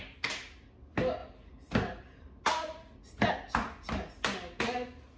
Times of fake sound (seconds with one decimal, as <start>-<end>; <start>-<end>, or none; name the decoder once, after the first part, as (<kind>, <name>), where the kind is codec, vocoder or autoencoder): 1.2-3.3 (vocoder, BigVGAN v2)